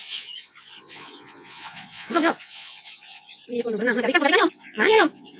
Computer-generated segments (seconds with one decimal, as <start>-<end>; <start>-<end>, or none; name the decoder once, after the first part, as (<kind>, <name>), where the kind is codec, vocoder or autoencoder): 0.0-3.4 (vocoder, Vocos); 4.5-5.4